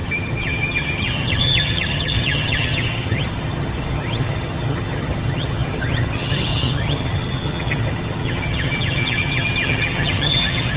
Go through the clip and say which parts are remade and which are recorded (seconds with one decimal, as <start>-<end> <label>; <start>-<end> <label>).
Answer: 0.0-10.8 remade